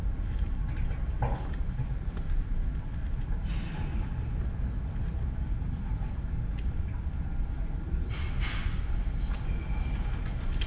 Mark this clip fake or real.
real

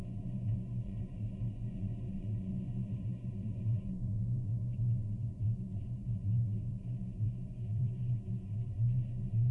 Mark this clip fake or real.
fake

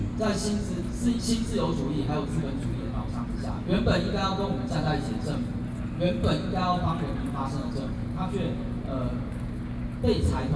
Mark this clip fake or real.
real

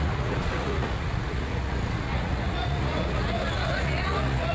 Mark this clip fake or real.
fake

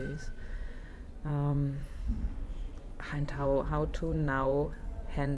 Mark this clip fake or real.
fake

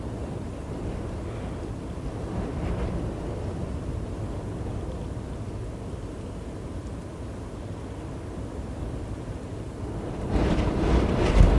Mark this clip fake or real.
real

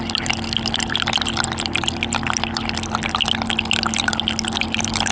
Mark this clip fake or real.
real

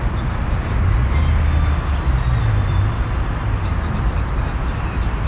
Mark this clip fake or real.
real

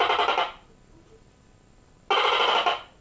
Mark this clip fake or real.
real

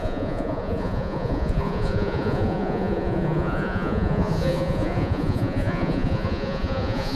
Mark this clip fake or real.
fake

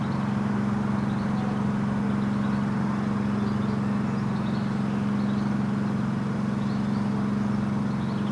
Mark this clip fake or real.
real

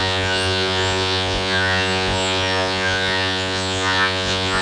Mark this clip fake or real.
fake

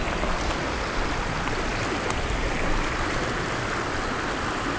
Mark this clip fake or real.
real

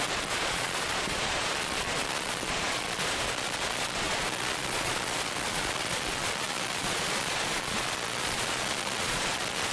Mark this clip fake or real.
fake